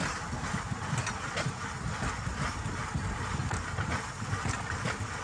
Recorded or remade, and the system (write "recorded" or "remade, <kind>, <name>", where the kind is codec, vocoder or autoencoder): recorded